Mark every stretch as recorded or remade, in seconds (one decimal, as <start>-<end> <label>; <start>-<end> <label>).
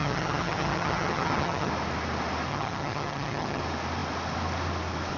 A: 0.0-1.7 remade; 1.7-2.5 recorded; 2.5-3.6 remade; 3.6-5.2 recorded